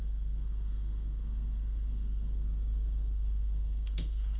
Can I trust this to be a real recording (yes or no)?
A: no